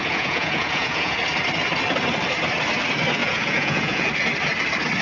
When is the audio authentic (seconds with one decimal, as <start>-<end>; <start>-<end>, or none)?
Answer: 1.2-3.2; 4.1-5.0